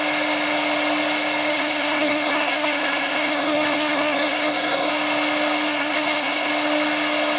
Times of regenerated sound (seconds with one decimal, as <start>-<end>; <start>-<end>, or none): 1.5-4.9; 5.7-6.5